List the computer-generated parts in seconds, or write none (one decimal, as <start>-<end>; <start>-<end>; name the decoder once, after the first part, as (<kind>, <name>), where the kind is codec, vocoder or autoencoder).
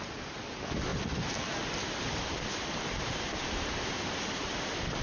0.9-3.9 (vocoder, BigVGAN v2)